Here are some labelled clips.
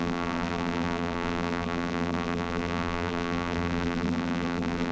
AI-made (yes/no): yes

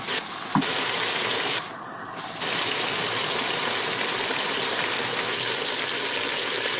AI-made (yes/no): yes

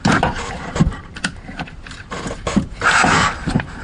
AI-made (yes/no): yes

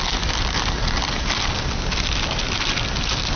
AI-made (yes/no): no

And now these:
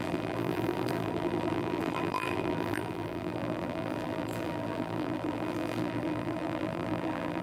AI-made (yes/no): yes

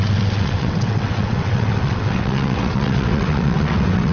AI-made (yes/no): yes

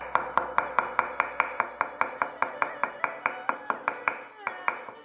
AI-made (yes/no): no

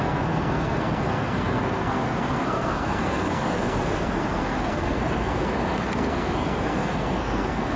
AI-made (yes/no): yes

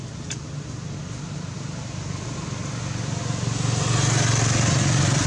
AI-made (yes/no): no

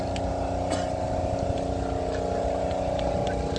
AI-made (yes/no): no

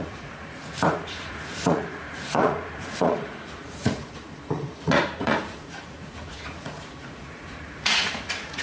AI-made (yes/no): yes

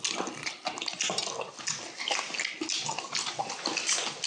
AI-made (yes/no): no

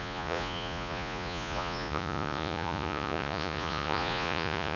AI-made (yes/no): yes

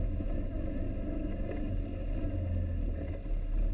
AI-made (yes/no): no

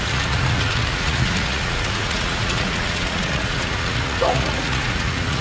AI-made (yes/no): yes